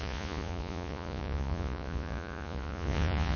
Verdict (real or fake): fake